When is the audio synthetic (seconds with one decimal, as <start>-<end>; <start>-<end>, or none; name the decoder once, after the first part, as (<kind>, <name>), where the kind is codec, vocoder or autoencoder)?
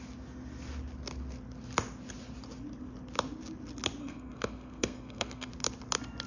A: 4.0-5.5 (codec, SNAC)